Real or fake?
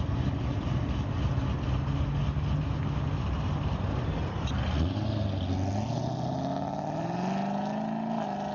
real